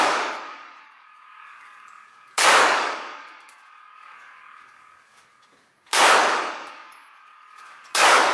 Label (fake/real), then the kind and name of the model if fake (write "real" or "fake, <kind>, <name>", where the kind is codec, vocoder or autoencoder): fake, codec, DAC